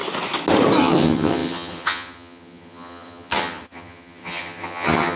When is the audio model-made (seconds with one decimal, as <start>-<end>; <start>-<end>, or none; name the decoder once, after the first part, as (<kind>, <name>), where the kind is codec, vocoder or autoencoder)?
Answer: 0.8-5.2 (vocoder, HiFi-GAN)